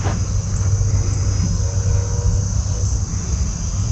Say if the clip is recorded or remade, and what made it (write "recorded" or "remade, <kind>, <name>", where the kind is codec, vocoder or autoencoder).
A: recorded